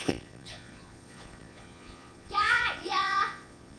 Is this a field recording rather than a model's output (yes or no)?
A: no